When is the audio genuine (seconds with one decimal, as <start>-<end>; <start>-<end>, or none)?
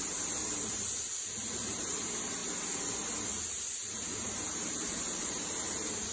2.4-3.4